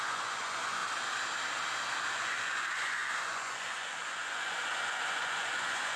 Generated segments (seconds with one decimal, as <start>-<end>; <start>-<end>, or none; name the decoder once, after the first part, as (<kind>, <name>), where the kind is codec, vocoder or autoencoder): 0.0-0.8 (vocoder, Vocos); 2.1-6.0